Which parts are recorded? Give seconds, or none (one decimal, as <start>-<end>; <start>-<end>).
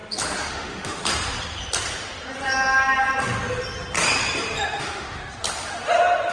0.0-0.5; 1.0-4.8; 5.2-6.3